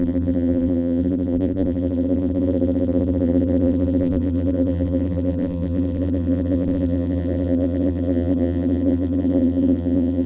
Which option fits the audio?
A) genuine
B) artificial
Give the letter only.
B